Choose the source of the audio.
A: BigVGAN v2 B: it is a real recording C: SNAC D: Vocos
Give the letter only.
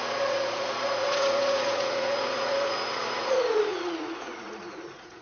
D